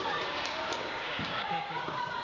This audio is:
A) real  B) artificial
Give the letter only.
B